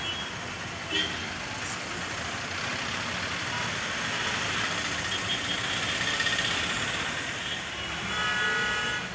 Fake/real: real